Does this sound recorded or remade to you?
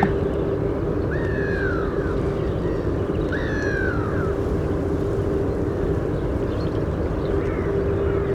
recorded